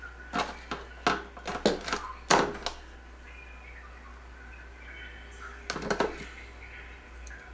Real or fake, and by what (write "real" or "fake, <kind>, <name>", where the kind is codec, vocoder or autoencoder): real